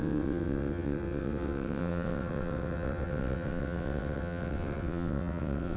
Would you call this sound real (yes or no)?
no